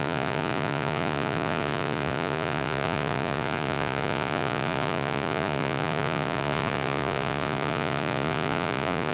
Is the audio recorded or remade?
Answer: remade